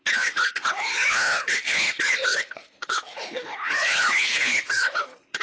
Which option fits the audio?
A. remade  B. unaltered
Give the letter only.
A